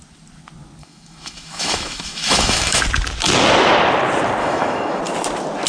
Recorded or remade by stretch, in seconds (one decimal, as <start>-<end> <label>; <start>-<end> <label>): 0.0-0.8 recorded; 0.8-2.8 remade; 2.8-4.4 recorded; 4.4-5.0 remade; 5.0-5.7 recorded